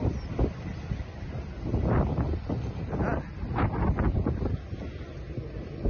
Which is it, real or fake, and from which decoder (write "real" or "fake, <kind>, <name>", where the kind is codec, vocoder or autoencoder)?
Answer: real